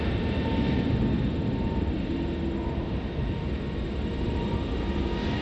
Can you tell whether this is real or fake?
real